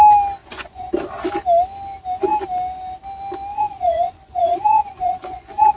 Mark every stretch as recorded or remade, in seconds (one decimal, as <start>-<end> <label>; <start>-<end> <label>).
0.0-0.4 recorded; 0.4-0.9 remade; 0.9-3.5 recorded; 3.5-5.8 remade